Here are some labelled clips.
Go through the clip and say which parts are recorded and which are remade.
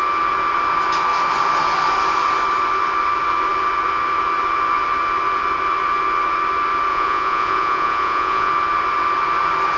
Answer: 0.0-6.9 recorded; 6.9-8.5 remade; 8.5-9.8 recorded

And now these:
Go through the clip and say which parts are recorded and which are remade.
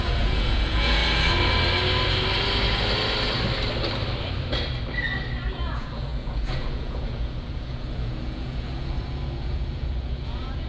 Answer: 0.0-1.0 remade; 1.0-5.5 recorded; 5.5-10.7 remade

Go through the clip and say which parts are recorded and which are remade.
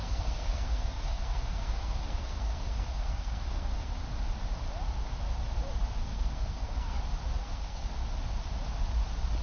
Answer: 0.0-3.9 remade; 3.9-6.0 recorded; 6.0-7.0 remade; 7.0-7.4 recorded; 7.4-7.9 remade; 7.9-9.4 recorded